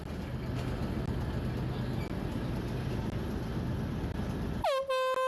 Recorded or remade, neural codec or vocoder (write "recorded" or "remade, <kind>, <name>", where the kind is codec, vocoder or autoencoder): recorded